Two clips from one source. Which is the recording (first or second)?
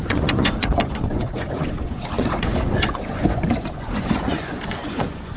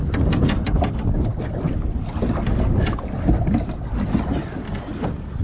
second